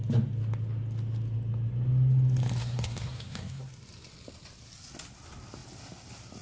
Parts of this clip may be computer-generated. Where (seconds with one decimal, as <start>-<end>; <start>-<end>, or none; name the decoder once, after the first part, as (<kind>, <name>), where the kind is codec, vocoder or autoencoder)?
2.6-3.7 (codec, SNAC)